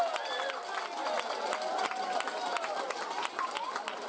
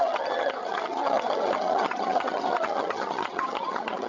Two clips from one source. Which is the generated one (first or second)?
second